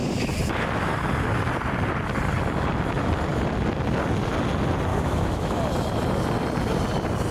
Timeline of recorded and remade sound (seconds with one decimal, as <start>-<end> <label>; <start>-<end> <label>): 0.0-4.9 recorded; 4.9-5.6 remade; 5.6-7.3 recorded